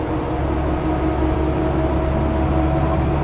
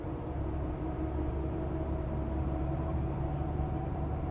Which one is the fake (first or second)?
second